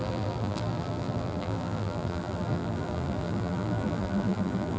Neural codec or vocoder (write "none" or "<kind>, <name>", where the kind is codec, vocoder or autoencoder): vocoder, BigVGAN v2